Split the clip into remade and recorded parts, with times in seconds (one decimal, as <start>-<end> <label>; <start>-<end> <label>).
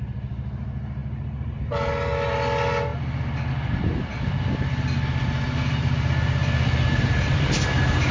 0.0-8.1 recorded